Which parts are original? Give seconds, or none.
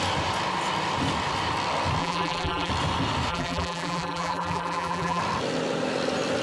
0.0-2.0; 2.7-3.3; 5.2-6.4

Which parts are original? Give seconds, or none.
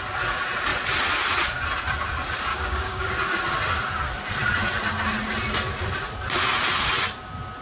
0.0-2.5; 3.1-7.6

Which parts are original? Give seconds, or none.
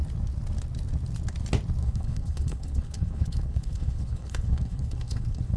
0.0-1.8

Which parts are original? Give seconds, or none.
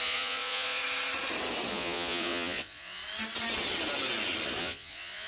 0.8-1.7; 3.0-4.6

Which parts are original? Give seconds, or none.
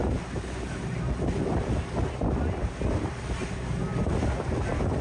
0.0-5.0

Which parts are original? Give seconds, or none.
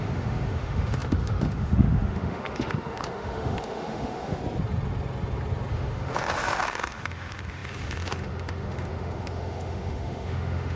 4.4-5.7